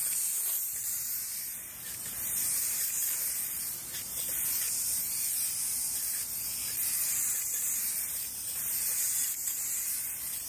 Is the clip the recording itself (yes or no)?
yes